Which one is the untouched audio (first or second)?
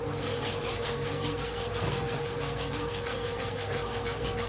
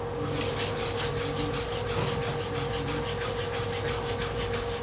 second